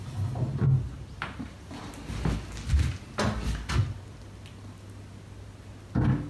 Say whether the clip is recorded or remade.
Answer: recorded